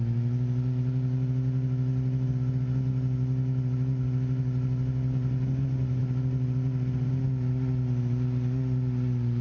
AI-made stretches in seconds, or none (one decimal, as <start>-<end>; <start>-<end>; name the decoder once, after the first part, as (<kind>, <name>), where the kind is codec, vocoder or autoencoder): none